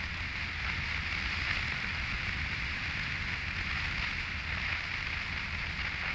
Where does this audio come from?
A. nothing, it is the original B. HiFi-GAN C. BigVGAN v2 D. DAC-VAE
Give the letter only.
A